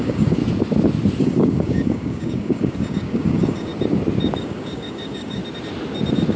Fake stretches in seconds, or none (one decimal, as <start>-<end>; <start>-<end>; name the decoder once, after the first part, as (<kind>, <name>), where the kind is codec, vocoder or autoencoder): 0.0-0.4 (codec, DAC); 1.2-3.7; 4.4-5.4